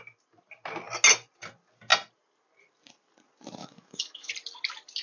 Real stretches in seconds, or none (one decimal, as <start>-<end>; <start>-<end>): 0.0-3.6; 4.3-5.0